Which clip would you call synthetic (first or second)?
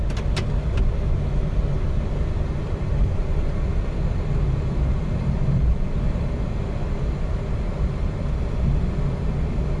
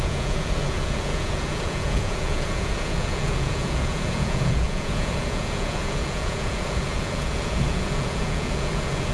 second